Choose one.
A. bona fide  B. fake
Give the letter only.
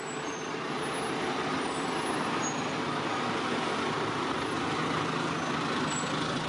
A